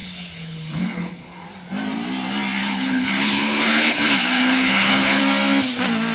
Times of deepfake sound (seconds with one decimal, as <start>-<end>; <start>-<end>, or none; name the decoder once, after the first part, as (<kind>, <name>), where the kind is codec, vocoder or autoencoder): 0.0-1.4 (codec, HILCodec); 2.6-5.2